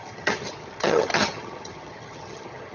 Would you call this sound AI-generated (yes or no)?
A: yes